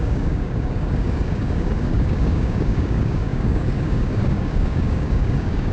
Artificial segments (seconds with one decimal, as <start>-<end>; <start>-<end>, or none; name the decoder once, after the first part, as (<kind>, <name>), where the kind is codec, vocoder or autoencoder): 0.0-5.7 (codec, DAC)